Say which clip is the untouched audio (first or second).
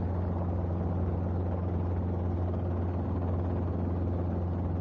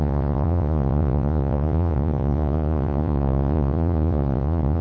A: first